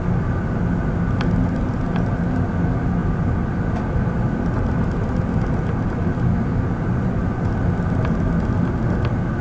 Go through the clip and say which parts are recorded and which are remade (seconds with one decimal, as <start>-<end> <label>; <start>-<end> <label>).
0.0-6.9 recorded; 6.9-7.5 remade; 7.5-9.4 recorded